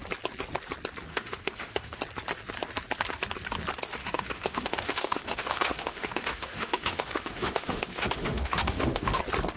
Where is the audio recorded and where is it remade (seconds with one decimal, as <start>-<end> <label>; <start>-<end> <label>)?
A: 0.0-1.1 recorded; 1.1-2.0 remade; 2.0-4.0 recorded; 4.0-9.2 remade; 9.2-9.6 recorded